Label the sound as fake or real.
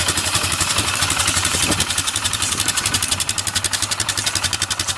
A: fake